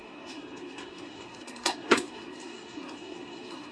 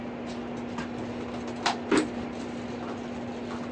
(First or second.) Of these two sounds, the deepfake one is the first